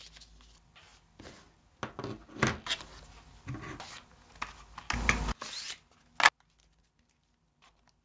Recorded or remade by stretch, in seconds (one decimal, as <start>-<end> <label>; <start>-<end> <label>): 0.0-8.0 recorded